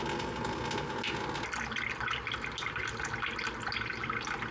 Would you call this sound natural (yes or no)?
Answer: yes